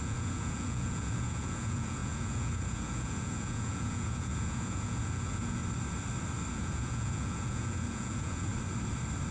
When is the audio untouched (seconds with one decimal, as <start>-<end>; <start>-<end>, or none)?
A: 5.6-6.5; 8.5-9.3